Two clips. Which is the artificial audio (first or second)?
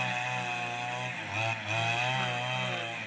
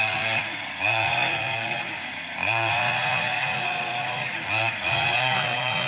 second